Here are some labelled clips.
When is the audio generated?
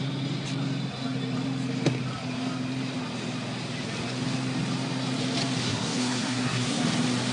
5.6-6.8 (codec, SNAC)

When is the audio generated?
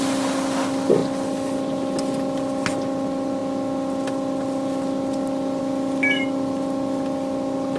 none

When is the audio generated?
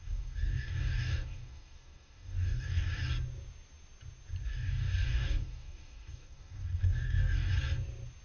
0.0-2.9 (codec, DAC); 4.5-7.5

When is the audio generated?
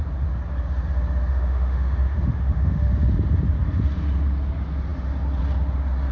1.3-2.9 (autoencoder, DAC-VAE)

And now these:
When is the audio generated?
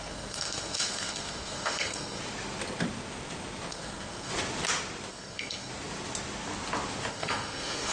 0.0-2.2 (codec, SNAC); 3.7-4.3; 5.1-5.7; 7.1-7.9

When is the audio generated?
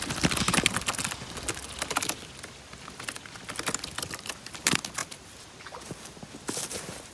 none